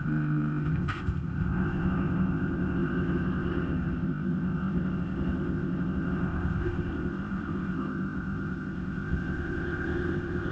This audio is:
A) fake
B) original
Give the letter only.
A